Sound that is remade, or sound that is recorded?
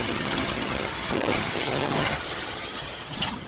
remade